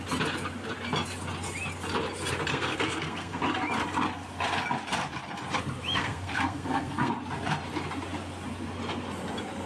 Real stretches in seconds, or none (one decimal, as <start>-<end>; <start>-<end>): 0.0-2.5; 3.4-6.0; 7.1-9.7